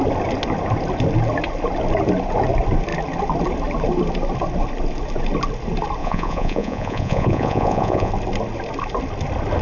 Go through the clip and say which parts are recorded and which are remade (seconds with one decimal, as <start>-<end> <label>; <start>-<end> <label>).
0.0-6.0 recorded; 6.0-8.1 remade; 8.1-9.6 recorded